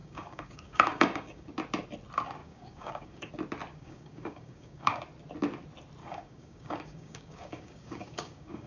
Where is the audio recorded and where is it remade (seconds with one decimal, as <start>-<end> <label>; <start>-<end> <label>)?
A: 0.0-1.5 remade; 1.5-2.4 recorded; 2.4-3.3 remade; 3.3-3.7 recorded; 3.7-5.0 remade; 5.0-6.0 recorded; 6.0-8.7 remade